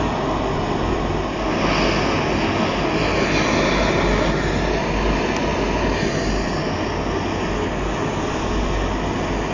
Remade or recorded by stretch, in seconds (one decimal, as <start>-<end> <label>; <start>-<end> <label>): 0.0-9.5 recorded